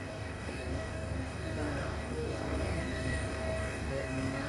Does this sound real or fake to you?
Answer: fake